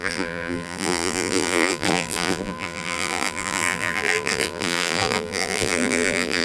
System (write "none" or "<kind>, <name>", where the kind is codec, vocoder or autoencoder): vocoder, BigVGAN v2